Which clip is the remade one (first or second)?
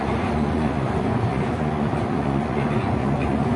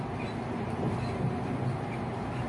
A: first